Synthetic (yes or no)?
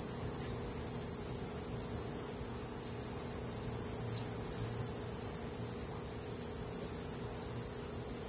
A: no